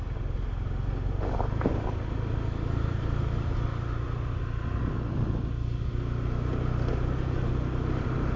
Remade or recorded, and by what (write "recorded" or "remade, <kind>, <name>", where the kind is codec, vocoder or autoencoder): recorded